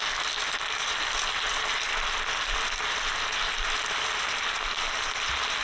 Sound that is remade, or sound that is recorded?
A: recorded